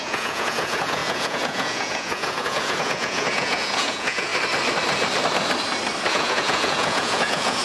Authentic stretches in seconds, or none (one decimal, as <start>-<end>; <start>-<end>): 4.3-6.1